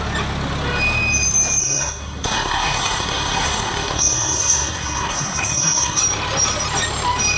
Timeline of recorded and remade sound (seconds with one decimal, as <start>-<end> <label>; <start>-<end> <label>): 0.0-1.6 recorded; 1.6-6.0 remade; 6.0-7.4 recorded